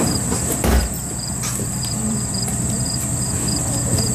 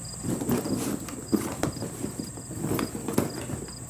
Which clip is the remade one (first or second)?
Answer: first